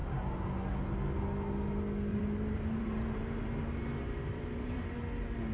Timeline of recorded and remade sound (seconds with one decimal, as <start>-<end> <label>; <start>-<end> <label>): 0.0-2.1 recorded; 2.1-4.8 remade; 4.8-5.5 recorded